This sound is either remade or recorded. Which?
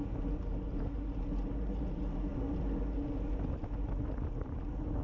recorded